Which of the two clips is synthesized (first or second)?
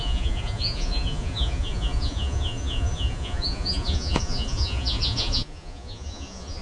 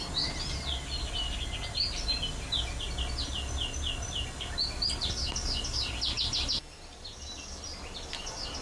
first